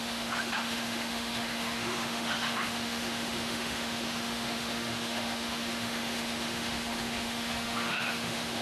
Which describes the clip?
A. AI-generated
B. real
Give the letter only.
A